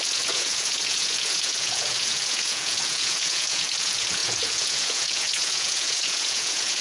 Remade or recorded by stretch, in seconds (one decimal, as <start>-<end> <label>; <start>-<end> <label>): 0.0-6.8 remade